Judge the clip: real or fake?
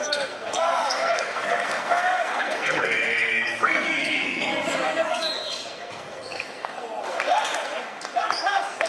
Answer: fake